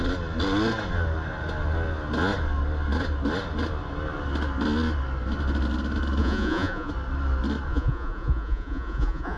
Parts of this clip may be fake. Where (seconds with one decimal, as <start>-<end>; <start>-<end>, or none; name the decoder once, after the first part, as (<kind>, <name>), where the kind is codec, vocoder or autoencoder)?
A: 6.2-6.9 (vocoder, Vocos); 7.7-9.4